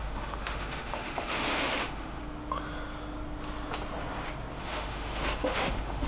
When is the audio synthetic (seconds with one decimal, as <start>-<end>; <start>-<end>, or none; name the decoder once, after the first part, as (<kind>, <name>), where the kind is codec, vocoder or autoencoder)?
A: 0.0-2.2 (autoencoder, DAC-VAE); 4.6-6.1